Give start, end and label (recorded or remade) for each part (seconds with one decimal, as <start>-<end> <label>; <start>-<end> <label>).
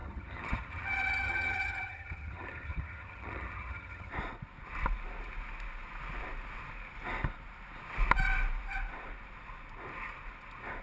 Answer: 0.0-4.1 remade; 4.1-10.8 recorded